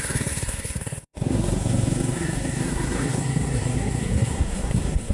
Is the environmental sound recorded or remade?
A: remade